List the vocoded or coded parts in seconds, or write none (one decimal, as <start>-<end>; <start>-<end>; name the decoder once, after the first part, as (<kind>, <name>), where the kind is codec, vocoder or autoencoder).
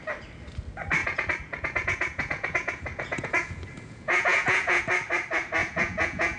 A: 1.0-4.8 (vocoder, Vocos); 5.6-6.4